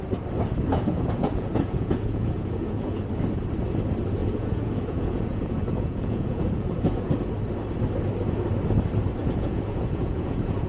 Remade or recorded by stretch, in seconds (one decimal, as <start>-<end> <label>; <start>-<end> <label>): 0.0-0.7 recorded; 0.7-3.0 remade; 3.0-4.2 recorded; 4.2-7.1 remade; 7.1-9.2 recorded; 9.2-10.7 remade